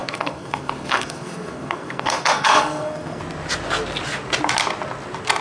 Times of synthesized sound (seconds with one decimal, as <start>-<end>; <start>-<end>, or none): 0.0-3.2